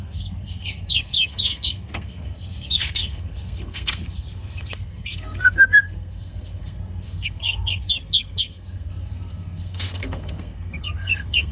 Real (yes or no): no